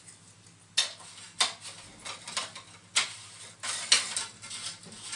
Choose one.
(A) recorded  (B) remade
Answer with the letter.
A